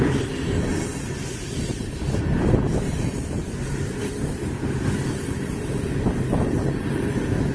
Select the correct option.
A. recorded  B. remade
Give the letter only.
B